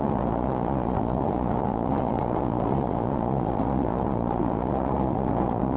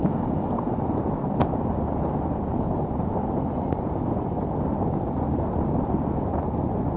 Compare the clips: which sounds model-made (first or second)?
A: first